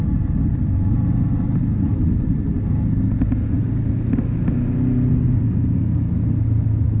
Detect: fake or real real